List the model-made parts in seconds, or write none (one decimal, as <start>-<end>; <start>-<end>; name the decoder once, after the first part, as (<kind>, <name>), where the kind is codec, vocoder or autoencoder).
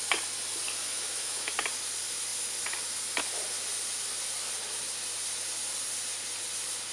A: 0.8-1.5 (autoencoder, DAC-VAE)